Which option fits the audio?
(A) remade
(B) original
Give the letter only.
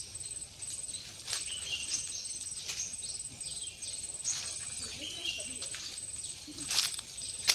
B